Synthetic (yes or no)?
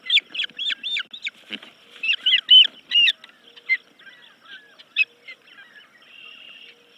no